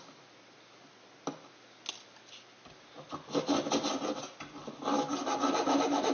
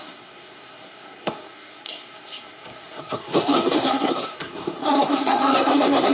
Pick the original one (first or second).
first